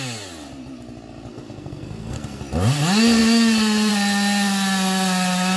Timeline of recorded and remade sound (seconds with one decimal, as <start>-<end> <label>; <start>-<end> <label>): 0.0-1.3 recorded; 1.3-2.4 remade; 2.4-5.6 recorded